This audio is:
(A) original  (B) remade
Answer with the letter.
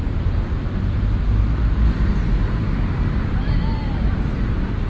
A